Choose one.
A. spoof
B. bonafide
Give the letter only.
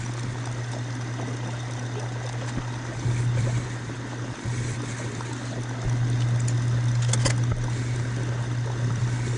B